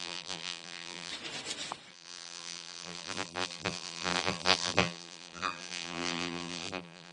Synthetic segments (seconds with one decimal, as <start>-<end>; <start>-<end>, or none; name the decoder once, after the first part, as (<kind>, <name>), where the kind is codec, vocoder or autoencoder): 0.0-1.1 (vocoder, BigVGAN v2); 1.9-7.1